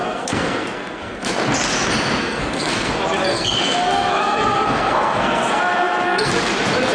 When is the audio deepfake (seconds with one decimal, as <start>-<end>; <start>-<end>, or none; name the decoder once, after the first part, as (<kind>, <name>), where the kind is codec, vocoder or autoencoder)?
0.0-1.3 (codec, SNAC); 2.2-2.9; 3.3-6.3